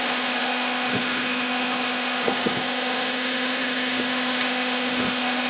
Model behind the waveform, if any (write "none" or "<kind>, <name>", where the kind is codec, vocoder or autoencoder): autoencoder, DAC-VAE